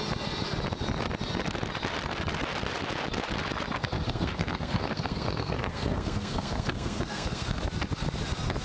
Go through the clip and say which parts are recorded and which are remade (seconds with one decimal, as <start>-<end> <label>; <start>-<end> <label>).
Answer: 0.0-3.8 recorded; 3.8-7.6 remade; 7.6-8.6 recorded